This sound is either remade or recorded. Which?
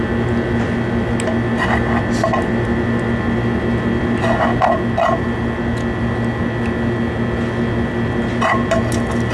recorded